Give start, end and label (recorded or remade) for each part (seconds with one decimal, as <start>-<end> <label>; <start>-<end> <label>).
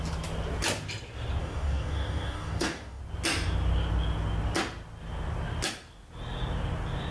0.0-1.4 recorded; 1.4-3.0 remade; 3.0-7.1 recorded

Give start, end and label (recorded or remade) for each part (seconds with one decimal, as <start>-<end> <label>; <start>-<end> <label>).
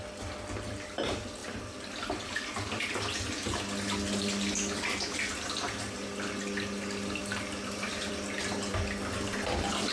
0.0-9.9 recorded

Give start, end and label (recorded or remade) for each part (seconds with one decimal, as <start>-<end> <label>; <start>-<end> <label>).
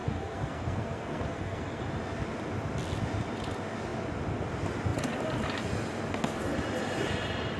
0.0-1.9 remade; 1.9-7.6 recorded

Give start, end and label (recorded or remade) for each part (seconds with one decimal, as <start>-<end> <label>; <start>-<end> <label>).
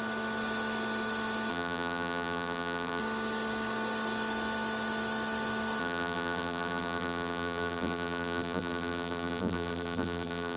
0.0-1.5 recorded; 1.5-3.0 remade; 3.0-5.8 recorded; 5.8-10.6 remade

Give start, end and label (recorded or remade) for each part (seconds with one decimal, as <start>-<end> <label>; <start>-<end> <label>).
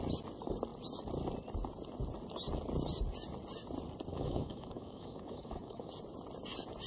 0.0-4.1 recorded; 4.1-5.9 remade; 5.9-6.9 recorded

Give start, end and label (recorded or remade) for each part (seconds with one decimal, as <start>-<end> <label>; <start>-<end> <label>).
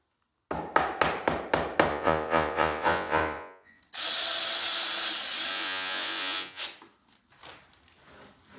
0.0-1.9 recorded; 1.9-3.8 remade; 3.8-5.5 recorded; 5.5-6.6 remade; 6.6-8.6 recorded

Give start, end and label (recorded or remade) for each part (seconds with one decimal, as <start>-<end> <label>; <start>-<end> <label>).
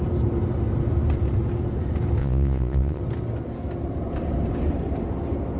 0.0-2.2 recorded; 2.2-3.0 remade; 3.0-5.6 recorded